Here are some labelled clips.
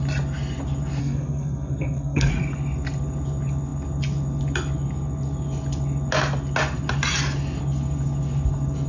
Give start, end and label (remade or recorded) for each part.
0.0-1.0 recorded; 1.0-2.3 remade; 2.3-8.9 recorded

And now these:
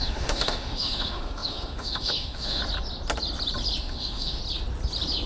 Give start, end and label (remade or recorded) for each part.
0.0-2.6 remade; 2.6-3.8 recorded; 3.8-4.4 remade; 4.4-5.3 recorded

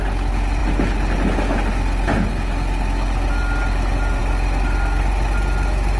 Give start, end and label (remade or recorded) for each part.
0.0-6.0 recorded

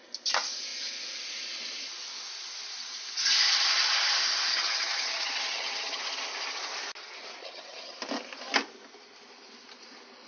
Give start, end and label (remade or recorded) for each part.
0.0-4.5 recorded; 4.5-6.0 remade; 6.0-7.4 recorded; 7.4-8.0 remade; 8.0-10.3 recorded

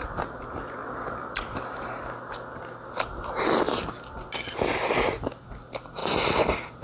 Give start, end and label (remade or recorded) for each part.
0.0-6.8 recorded